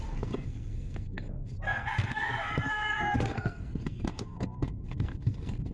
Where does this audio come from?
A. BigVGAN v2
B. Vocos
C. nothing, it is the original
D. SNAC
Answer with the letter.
D